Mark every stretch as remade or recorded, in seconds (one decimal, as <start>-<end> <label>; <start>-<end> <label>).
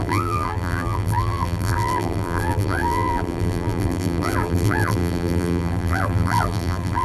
0.0-7.0 remade